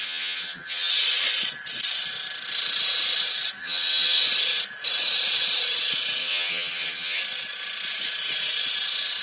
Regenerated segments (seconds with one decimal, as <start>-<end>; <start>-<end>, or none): 0.0-0.9; 3.6-4.2; 6.2-7.2